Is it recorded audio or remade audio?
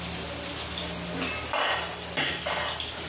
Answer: recorded